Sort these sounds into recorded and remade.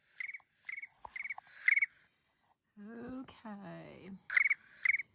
recorded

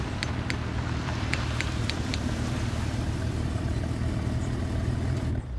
remade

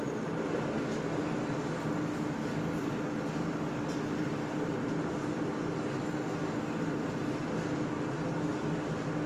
recorded